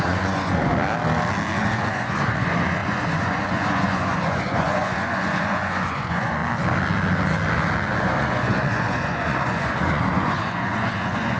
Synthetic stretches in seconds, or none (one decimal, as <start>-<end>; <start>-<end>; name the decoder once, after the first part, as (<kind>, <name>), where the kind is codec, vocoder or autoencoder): 0.0-0.7 (vocoder, Vocos); 1.6-6.4; 8.0-11.4